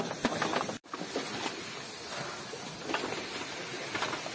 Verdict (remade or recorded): recorded